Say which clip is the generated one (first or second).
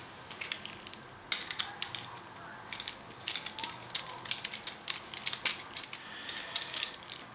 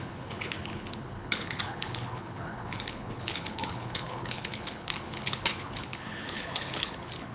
second